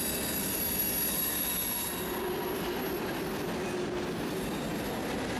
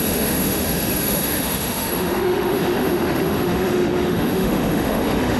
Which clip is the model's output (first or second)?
second